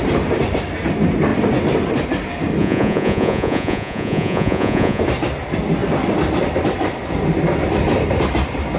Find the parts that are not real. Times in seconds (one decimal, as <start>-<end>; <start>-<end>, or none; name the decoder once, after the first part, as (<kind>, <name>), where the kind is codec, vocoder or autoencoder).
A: 2.6-5.0 (vocoder, Vocos)